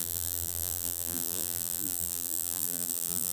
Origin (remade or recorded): remade